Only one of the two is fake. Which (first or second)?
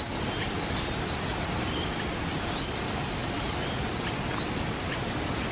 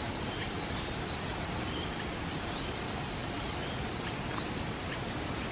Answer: second